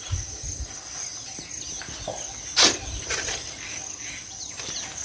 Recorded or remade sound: recorded